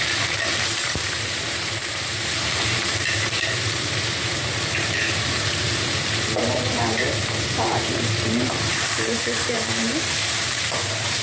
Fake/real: fake